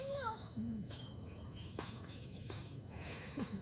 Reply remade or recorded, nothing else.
remade